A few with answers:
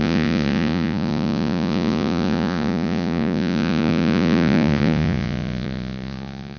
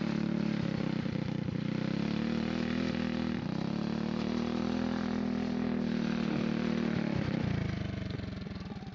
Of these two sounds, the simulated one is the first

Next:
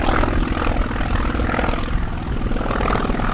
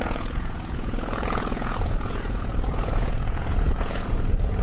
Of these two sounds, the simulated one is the second